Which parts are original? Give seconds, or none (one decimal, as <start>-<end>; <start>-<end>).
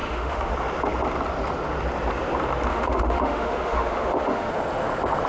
0.5-2.7; 4.5-5.3